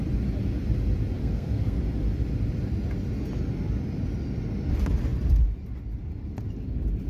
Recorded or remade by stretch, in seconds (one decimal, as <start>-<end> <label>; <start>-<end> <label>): 0.0-1.2 recorded; 1.2-1.8 remade; 1.8-7.1 recorded